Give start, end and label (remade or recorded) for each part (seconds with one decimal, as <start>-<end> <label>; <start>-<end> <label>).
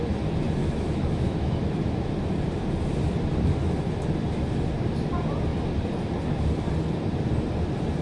0.0-0.6 recorded; 0.6-2.1 remade; 2.1-8.0 recorded